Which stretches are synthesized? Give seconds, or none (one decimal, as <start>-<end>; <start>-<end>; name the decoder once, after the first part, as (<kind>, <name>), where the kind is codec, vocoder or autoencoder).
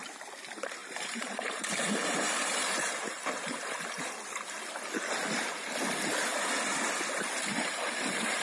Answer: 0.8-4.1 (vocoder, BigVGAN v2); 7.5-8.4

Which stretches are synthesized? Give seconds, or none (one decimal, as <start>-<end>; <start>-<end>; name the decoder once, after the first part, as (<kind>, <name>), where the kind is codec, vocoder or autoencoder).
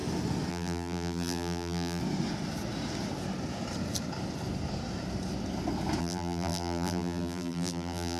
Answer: 0.5-2.0 (vocoder, BigVGAN v2); 6.0-8.2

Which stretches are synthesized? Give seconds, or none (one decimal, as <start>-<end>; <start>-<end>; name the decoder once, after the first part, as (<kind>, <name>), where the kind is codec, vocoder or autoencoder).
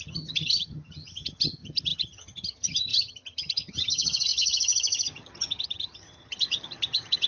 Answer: 0.0-7.3 (vocoder, HiFi-GAN)